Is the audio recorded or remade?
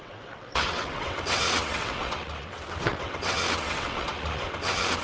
remade